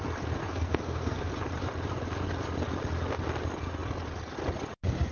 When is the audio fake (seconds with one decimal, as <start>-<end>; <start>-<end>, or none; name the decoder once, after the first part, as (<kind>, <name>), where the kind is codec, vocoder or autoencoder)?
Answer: 0.4-1.3 (codec, SNAC)